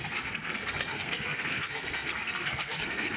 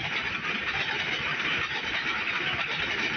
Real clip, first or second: second